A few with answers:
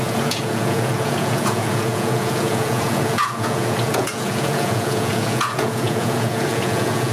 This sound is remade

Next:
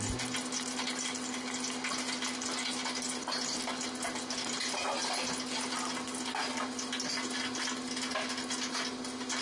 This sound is recorded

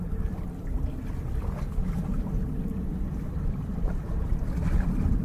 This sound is recorded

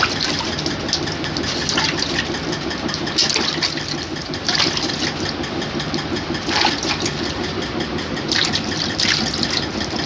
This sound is recorded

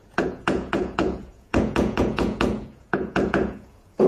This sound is remade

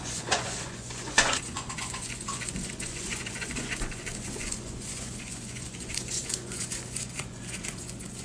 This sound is remade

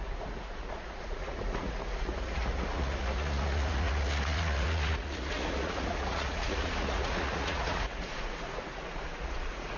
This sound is remade